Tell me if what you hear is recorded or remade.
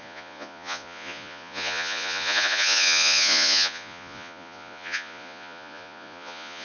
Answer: remade